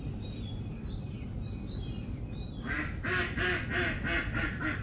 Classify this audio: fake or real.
real